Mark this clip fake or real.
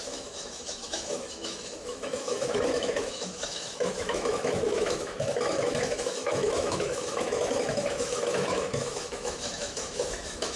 fake